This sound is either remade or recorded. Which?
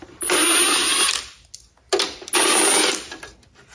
recorded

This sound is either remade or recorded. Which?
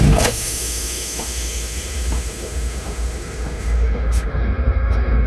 remade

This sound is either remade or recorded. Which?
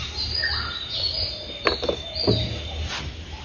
recorded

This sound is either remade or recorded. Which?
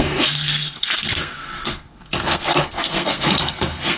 remade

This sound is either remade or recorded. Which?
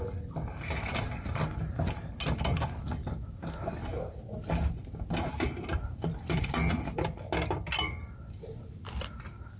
recorded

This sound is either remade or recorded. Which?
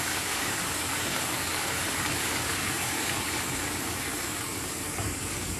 remade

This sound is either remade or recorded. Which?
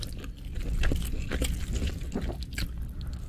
recorded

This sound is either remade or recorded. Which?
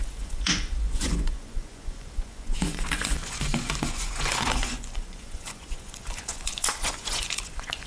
remade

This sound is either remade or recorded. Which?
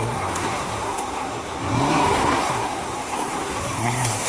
remade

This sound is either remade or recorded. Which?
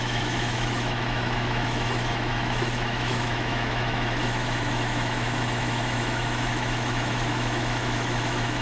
remade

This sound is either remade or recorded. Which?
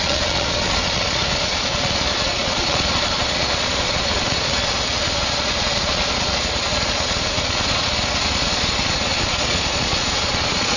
remade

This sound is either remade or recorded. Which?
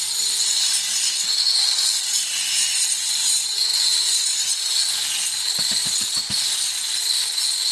recorded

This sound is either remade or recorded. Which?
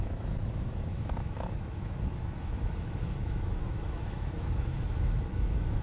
remade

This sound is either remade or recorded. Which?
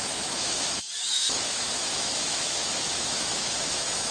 remade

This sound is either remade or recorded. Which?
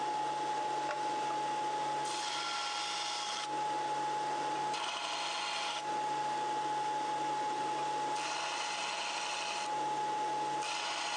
recorded